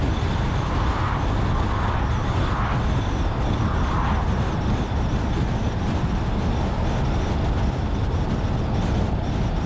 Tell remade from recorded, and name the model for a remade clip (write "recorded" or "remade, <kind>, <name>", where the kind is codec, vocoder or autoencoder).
recorded